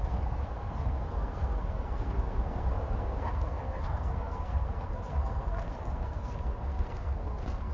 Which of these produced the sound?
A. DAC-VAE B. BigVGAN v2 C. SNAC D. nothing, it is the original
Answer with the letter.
C